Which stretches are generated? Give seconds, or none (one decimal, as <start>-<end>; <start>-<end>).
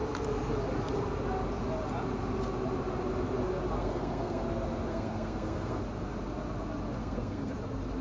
3.8-4.4; 4.9-5.8; 7.0-7.5